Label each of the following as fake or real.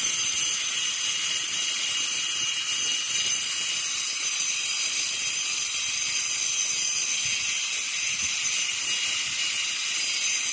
real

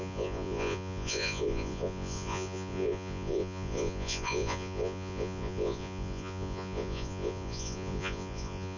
fake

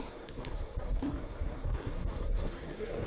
fake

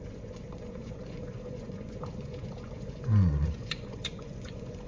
fake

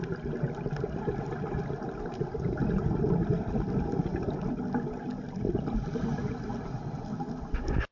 real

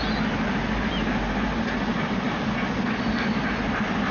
real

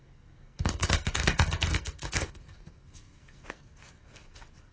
fake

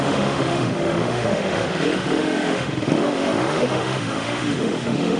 fake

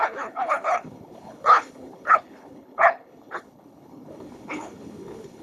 fake